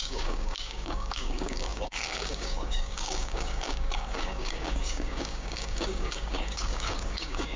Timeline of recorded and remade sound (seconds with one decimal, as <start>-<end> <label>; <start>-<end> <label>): 0.0-7.6 remade